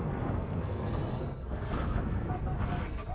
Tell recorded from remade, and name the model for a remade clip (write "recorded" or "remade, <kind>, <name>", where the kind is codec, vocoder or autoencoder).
remade, codec, SNAC